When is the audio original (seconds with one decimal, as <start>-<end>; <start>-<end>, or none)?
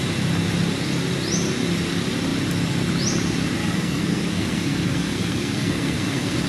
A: 0.0-3.6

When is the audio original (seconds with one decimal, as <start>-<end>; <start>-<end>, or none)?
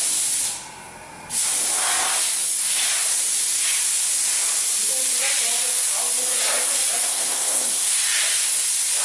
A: 0.0-7.1; 8.0-9.0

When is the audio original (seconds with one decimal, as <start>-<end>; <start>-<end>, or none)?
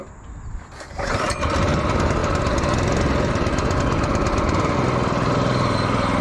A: 0.0-6.2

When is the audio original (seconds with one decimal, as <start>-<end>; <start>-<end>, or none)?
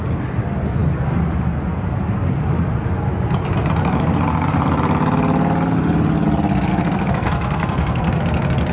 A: 0.0-6.7; 8.2-8.7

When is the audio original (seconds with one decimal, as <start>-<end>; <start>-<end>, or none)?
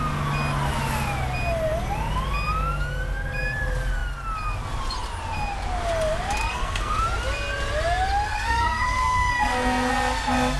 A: 0.0-6.4; 7.0-8.3; 9.9-10.6